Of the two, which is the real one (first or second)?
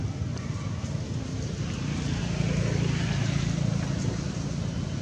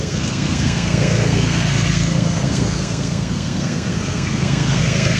first